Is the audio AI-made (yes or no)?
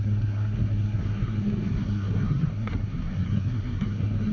yes